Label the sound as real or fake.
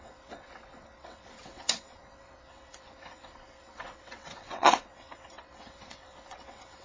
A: fake